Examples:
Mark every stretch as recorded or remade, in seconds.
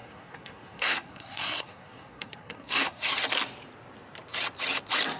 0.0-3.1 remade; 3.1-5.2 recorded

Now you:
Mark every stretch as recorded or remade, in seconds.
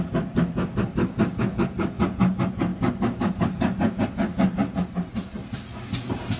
0.0-6.4 recorded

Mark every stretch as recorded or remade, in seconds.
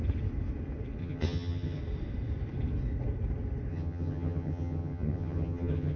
0.0-1.0 recorded; 1.0-1.8 remade; 1.8-3.7 recorded; 3.7-6.0 remade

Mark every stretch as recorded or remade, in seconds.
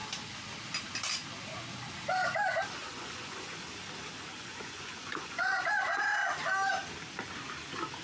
0.0-2.8 recorded; 2.8-3.6 remade; 3.6-4.3 recorded; 4.3-5.6 remade; 5.6-8.0 recorded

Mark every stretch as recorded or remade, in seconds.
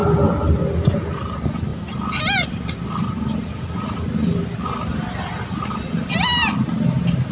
0.0-1.7 recorded; 1.7-6.1 remade; 6.1-7.3 recorded